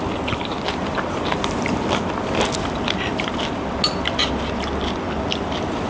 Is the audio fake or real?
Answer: real